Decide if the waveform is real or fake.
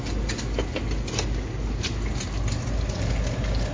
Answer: real